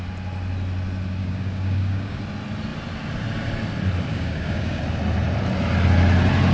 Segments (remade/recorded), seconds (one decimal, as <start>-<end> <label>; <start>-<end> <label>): 0.0-1.2 recorded; 1.2-2.2 remade; 2.2-4.1 recorded; 4.1-4.8 remade; 4.8-6.5 recorded